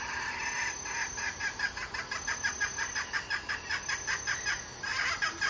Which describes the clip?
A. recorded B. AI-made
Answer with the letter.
A